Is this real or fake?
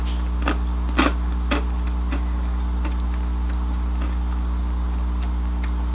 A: real